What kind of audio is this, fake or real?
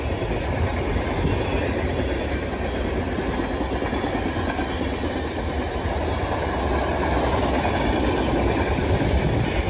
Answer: real